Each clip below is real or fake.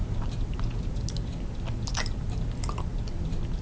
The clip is real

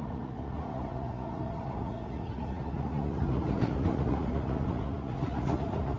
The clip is fake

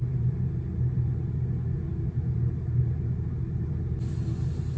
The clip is real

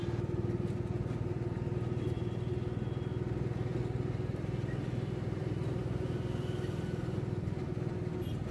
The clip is real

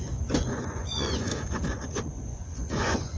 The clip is fake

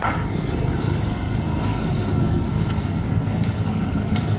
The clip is fake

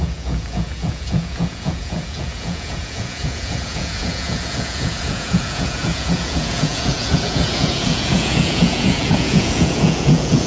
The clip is fake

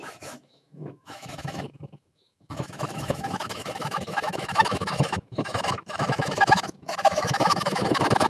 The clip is fake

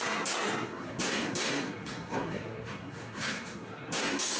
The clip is fake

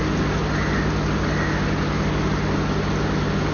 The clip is real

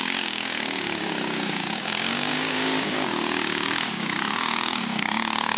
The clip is fake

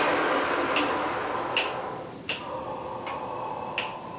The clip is real